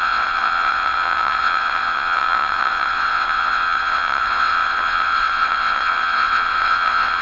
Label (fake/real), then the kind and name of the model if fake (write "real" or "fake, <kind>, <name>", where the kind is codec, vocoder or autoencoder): fake, vocoder, WaveNeXt